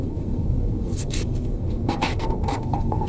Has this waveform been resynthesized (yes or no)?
yes